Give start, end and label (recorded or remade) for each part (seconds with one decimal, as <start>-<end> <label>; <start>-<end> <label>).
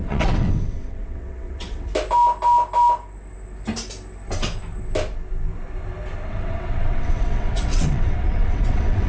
0.0-1.9 remade; 1.9-6.3 recorded; 6.3-9.1 remade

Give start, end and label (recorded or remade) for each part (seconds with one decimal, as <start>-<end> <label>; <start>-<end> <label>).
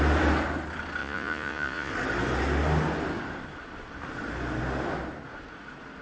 0.0-1.0 recorded; 1.0-1.9 remade; 1.9-6.0 recorded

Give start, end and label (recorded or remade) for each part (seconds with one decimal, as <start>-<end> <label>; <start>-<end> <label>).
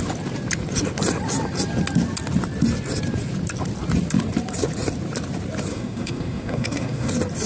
0.0-5.7 recorded; 5.7-7.1 remade; 7.1-7.5 recorded